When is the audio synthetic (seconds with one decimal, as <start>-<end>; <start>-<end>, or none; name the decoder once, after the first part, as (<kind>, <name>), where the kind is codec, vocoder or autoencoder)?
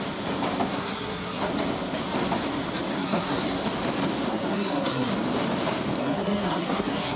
0.7-1.5 (codec, SNAC); 2.9-3.4; 4.3-5.1; 6.0-7.2